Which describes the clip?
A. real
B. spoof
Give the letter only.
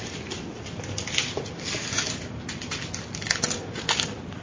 A